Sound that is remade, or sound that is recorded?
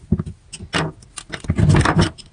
recorded